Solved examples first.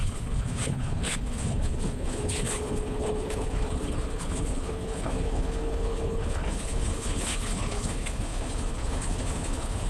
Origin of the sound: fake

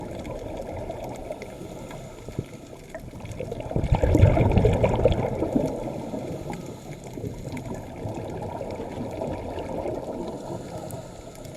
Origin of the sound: real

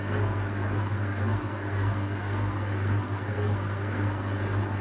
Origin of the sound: fake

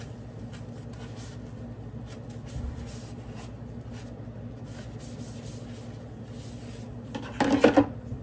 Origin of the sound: real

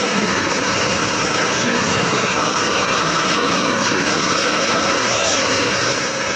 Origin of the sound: fake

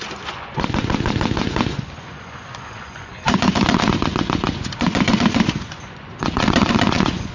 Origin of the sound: fake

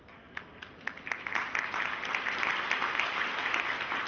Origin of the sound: real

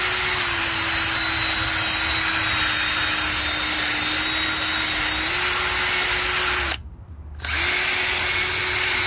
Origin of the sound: real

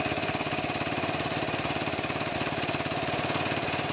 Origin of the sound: real